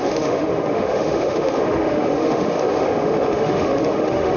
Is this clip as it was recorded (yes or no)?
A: no